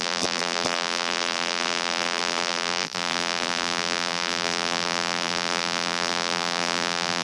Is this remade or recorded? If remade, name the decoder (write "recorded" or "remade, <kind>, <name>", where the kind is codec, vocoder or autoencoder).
remade, vocoder, BigVGAN v2